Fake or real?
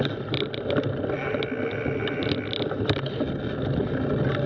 real